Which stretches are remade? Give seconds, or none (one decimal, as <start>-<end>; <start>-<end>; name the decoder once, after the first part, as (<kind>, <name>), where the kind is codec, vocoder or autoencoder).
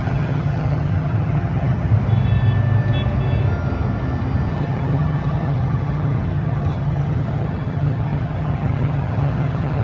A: 0.0-1.9 (vocoder, HiFi-GAN); 4.5-9.8